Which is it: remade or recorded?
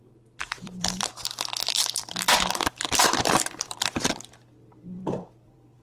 remade